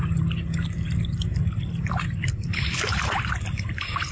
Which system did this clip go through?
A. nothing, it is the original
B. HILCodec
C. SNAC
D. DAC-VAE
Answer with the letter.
A